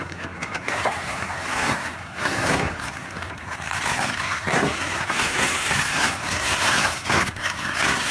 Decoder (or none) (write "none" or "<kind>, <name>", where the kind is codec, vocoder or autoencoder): codec, SNAC